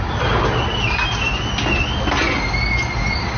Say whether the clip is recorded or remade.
recorded